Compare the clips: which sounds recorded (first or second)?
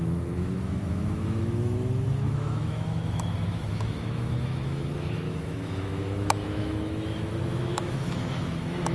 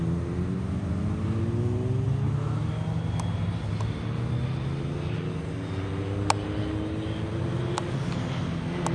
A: second